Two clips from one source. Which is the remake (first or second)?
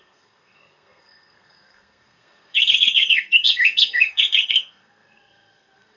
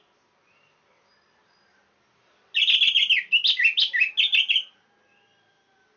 first